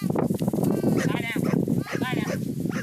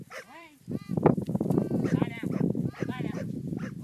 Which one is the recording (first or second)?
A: first